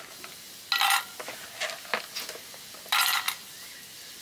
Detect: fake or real real